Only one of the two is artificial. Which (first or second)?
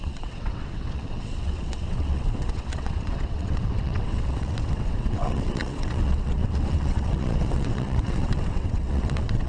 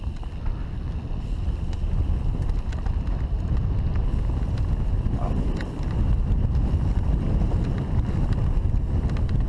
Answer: first